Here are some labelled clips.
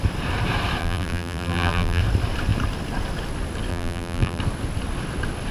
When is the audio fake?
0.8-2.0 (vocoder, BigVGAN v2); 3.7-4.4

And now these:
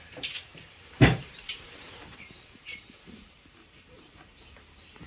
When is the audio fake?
0.0-5.1 (vocoder, BigVGAN v2)

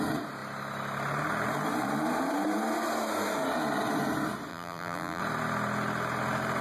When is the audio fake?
4.5-5.2 (vocoder, BigVGAN v2)

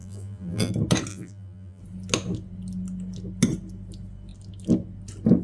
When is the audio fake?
0.0-0.7 (vocoder, BigVGAN v2); 1.1-1.8

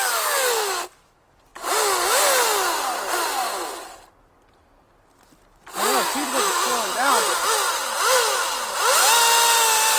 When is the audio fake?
none

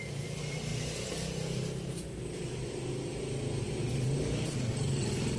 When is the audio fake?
0.0-0.7 (vocoder, BigVGAN v2); 3.5-5.4

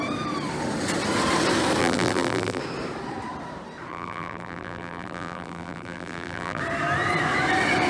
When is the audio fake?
1.8-2.6 (vocoder, BigVGAN v2); 3.9-6.6